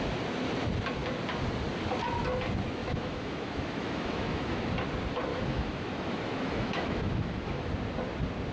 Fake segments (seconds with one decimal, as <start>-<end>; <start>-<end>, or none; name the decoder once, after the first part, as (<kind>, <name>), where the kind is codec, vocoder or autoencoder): 2.8-4.7 (autoencoder, DAC-VAE); 5.3-7.7